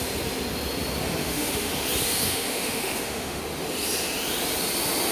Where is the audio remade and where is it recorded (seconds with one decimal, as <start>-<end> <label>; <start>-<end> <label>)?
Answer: 0.0-1.2 recorded; 1.2-1.7 remade; 1.7-2.2 recorded; 2.2-3.4 remade; 3.4-5.1 recorded